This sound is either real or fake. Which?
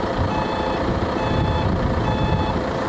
fake